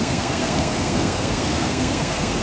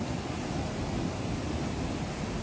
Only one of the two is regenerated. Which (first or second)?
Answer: first